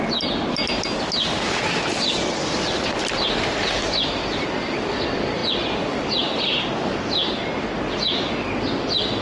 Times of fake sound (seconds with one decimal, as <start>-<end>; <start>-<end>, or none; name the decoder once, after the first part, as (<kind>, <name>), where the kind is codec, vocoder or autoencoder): none